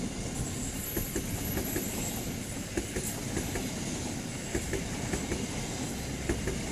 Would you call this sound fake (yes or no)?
no